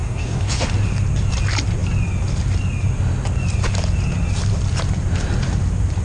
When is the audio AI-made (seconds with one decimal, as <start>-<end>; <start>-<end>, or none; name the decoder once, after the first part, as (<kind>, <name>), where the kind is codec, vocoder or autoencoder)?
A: 0.0-0.7 (codec, SNAC)